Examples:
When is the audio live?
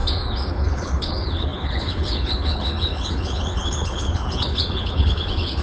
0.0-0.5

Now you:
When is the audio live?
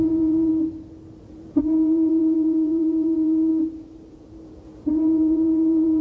0.5-1.2; 3.5-4.1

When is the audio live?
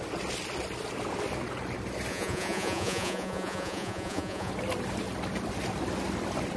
0.0-2.1; 4.5-6.6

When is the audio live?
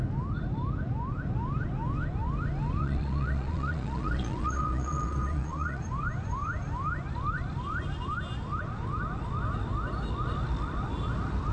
0.0-2.8; 5.8-11.5